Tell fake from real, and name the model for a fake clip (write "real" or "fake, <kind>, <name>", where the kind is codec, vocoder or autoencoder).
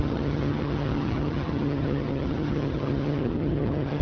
fake, vocoder, HiFi-GAN